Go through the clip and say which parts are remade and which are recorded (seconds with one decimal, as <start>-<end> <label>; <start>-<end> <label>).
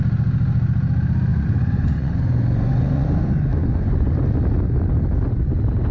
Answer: 0.0-1.3 recorded; 1.3-4.1 remade; 4.1-5.9 recorded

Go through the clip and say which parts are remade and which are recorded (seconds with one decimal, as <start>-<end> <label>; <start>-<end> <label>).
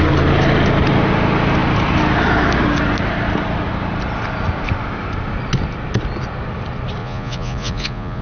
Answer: 0.0-7.0 recorded; 7.0-8.2 remade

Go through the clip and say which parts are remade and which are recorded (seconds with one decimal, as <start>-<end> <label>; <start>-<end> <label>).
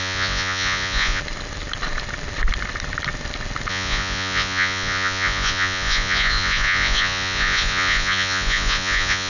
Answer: 0.0-1.2 remade; 1.2-3.7 recorded; 3.7-9.3 remade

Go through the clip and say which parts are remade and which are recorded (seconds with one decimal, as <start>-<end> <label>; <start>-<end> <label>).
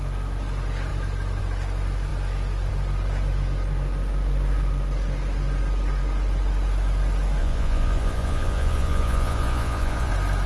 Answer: 0.0-7.4 recorded; 7.4-10.1 remade; 10.1-10.5 recorded